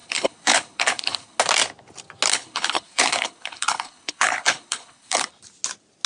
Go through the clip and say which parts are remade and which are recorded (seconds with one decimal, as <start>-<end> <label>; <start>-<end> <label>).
0.0-1.4 remade; 1.4-2.3 recorded; 2.3-5.3 remade; 5.3-6.1 recorded